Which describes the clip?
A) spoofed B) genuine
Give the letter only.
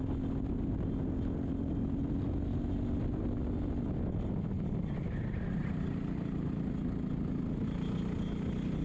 B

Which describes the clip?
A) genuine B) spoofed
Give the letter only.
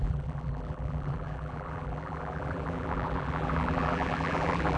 B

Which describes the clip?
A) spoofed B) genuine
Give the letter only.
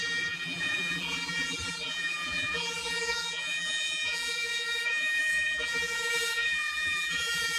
A